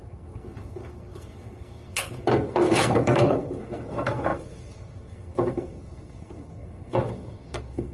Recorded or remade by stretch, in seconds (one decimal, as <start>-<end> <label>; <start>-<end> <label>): 0.0-7.9 remade